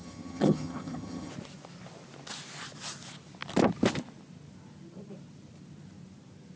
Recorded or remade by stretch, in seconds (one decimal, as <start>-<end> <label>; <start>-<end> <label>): 0.0-1.3 remade; 1.3-6.6 recorded